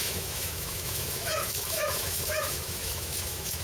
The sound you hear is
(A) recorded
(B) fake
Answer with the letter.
B